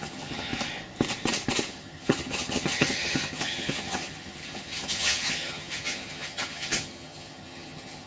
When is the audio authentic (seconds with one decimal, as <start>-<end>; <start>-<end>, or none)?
0.5-1.7